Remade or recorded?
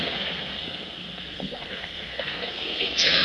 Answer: remade